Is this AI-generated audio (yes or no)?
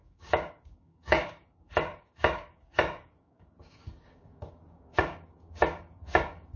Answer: yes